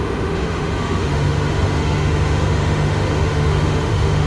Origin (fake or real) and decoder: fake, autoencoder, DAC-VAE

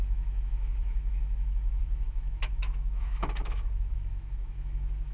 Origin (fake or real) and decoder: fake, autoencoder, DAC-VAE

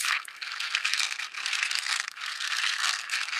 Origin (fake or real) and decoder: fake, codec, SNAC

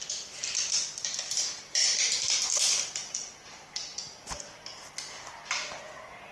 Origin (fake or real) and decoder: real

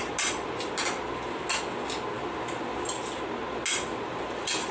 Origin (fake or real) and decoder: real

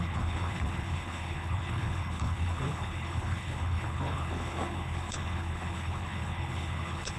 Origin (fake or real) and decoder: fake, codec, HILCodec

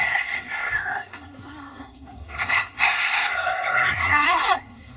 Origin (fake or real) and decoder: fake, codec, SNAC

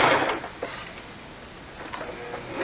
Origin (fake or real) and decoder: real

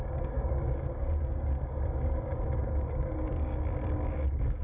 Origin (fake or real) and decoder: fake, codec, DAC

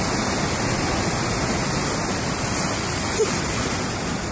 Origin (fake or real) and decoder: real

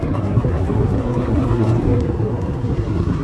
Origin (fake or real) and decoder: fake, codec, SNAC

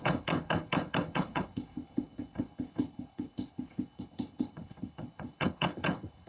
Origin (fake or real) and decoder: fake, codec, HILCodec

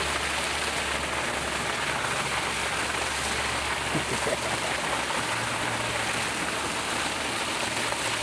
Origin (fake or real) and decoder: real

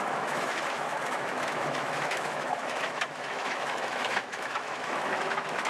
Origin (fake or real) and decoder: fake, autoencoder, DAC-VAE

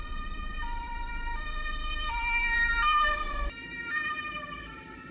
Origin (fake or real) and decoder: fake, vocoder, BigVGAN v2